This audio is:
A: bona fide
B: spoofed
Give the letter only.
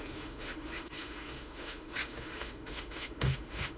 B